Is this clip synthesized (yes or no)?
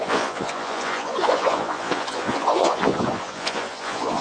yes